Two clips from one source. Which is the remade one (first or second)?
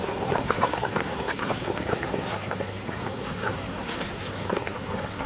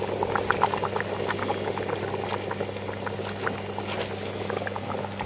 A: first